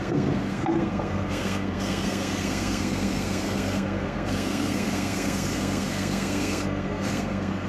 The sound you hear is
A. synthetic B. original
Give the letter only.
A